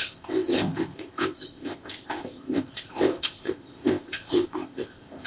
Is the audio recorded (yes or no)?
no